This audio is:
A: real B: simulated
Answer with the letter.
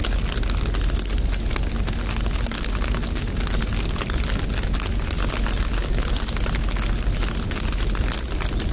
A